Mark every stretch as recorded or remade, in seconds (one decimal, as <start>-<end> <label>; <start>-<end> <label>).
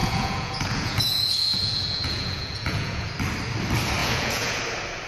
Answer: 0.0-3.1 remade; 3.1-4.0 recorded; 4.0-4.6 remade; 4.6-5.1 recorded